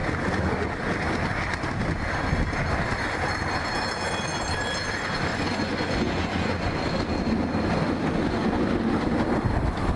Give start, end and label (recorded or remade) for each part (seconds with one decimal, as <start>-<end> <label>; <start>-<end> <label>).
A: 0.0-5.3 recorded; 5.3-6.8 remade; 6.8-10.0 recorded